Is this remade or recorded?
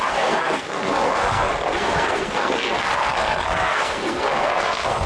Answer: remade